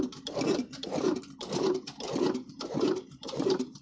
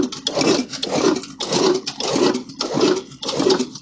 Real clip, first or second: second